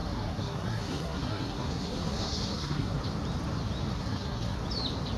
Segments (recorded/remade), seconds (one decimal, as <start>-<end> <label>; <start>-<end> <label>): 0.0-3.0 remade; 3.0-3.9 recorded; 3.9-4.6 remade; 4.6-5.2 recorded